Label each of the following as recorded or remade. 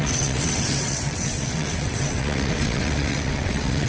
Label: remade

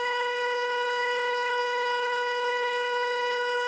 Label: remade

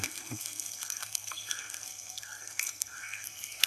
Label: remade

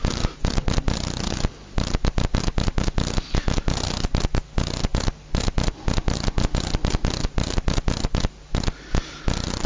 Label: recorded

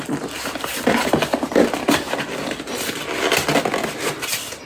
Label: recorded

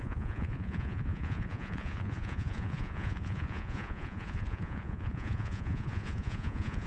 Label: remade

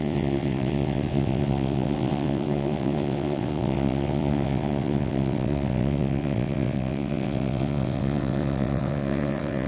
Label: remade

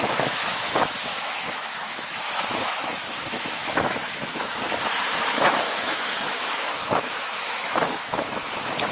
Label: remade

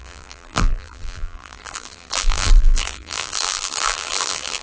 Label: remade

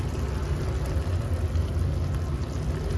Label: recorded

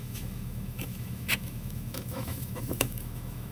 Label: remade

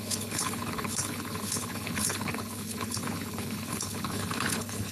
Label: remade